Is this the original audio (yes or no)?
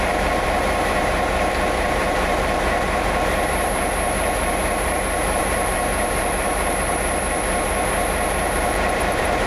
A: no